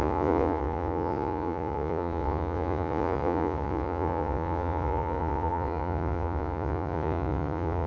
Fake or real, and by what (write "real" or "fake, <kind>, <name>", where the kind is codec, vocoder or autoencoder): fake, vocoder, Vocos